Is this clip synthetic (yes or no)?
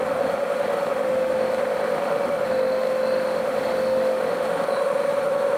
yes